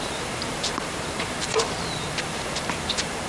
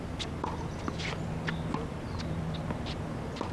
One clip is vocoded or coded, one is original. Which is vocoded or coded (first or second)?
first